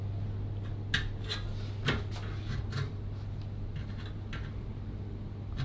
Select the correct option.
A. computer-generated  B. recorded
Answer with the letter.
B